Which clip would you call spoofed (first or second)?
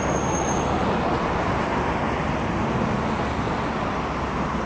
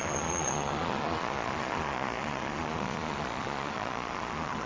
second